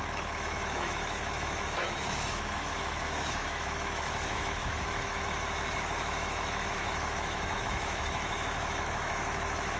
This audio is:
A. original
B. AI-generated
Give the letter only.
B